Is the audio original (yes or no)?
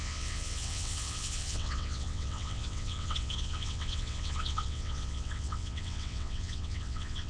no